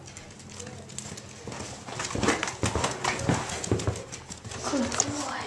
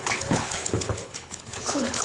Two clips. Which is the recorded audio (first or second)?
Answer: first